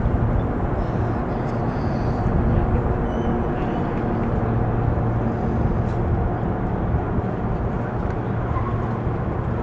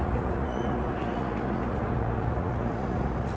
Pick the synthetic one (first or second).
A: second